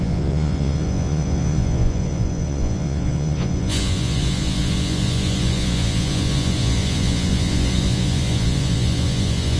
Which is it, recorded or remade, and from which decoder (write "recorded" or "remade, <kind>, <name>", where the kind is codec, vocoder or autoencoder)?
remade, vocoder, Vocos